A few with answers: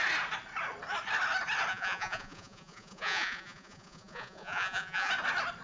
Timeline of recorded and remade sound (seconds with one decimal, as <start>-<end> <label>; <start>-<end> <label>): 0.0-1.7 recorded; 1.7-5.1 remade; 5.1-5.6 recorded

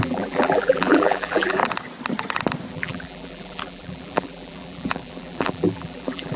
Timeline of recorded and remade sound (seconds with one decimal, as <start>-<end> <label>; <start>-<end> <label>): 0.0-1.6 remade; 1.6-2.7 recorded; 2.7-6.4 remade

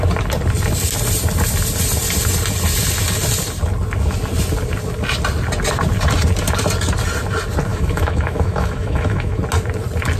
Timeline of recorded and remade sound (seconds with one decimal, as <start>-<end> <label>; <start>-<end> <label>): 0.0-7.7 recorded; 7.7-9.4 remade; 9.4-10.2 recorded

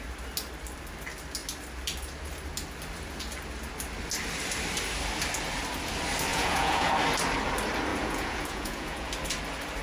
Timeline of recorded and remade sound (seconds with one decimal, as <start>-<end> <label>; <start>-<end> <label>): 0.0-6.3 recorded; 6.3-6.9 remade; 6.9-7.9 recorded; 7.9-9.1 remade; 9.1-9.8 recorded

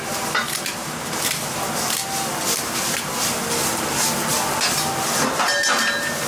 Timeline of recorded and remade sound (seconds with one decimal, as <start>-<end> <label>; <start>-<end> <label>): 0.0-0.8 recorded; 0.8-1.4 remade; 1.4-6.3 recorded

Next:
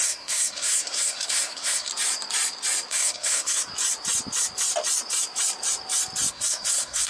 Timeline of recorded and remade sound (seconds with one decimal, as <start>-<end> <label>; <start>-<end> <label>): 0.0-1.9 remade; 1.9-2.9 recorded; 2.9-3.7 remade; 3.7-6.3 recorded; 6.3-7.1 remade

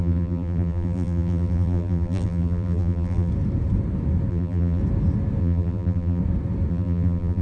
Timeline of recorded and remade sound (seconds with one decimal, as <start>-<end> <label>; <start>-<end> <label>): 0.0-3.3 remade; 3.3-4.3 recorded; 4.3-4.8 remade; 4.8-5.4 recorded; 5.4-6.2 remade; 6.2-6.7 recorded; 6.7-7.4 remade

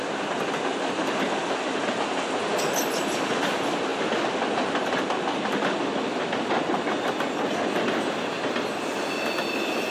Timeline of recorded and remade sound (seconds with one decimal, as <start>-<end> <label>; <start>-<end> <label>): 0.0-9.9 recorded